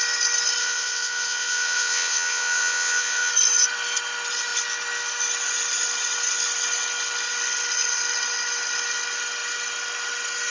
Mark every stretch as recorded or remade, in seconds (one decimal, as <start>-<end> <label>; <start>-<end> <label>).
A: 0.0-0.6 recorded; 0.6-3.3 remade; 3.3-10.5 recorded